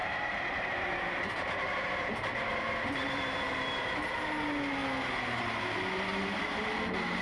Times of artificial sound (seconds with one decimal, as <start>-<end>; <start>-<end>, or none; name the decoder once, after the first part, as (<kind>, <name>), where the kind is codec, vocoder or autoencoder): 0.0-4.1 (vocoder, BigVGAN v2); 6.1-6.7